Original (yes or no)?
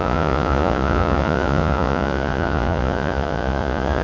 no